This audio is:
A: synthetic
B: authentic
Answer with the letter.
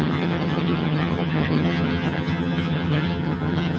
A